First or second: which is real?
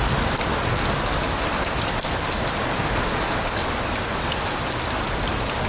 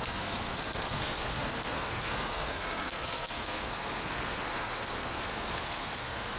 first